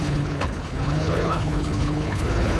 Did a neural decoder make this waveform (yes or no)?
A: yes